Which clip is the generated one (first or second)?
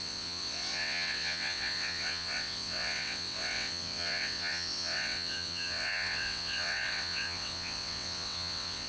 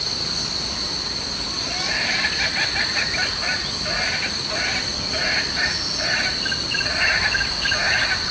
first